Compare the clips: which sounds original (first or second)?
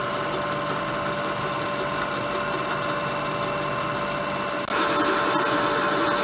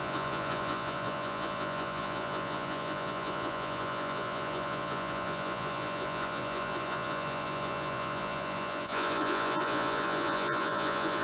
first